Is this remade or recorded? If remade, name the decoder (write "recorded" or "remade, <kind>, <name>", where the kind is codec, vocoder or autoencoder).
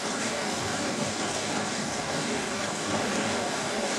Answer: remade, codec, DAC